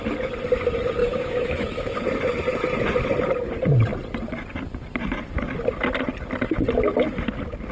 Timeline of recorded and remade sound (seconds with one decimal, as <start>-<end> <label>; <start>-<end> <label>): 0.0-1.0 recorded; 1.0-2.0 remade; 2.0-7.7 recorded